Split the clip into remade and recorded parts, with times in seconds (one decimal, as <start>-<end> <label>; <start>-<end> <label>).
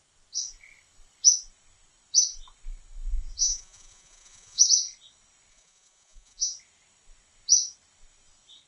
0.0-3.4 recorded; 3.4-4.6 remade; 4.6-5.5 recorded; 5.5-6.5 remade; 6.5-8.7 recorded